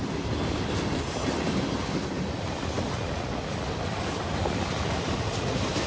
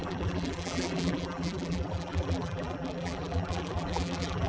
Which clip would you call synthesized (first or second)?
second